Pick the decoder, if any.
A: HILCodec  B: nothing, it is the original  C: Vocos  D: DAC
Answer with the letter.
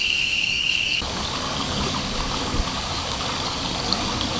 D